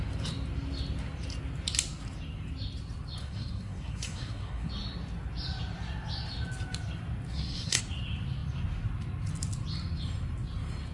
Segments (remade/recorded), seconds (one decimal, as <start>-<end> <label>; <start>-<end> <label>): 0.0-3.2 recorded; 3.2-4.7 remade; 4.7-7.3 recorded; 7.3-7.8 remade; 7.8-10.9 recorded